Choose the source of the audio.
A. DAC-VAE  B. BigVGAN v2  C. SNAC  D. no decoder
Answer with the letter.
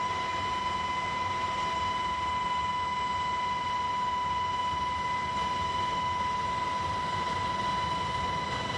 D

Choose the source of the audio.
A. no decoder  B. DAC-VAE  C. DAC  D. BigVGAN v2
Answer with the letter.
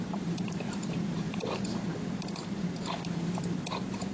D